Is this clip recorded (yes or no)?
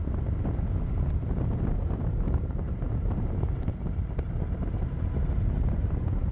yes